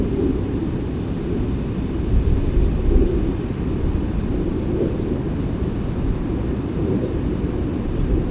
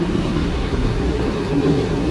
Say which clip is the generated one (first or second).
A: second